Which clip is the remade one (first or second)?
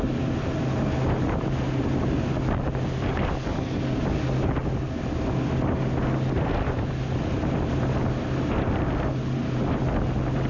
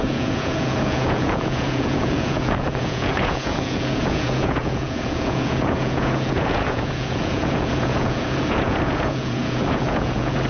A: second